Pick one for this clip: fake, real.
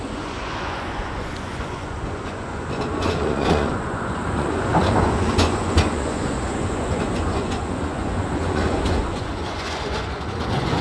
fake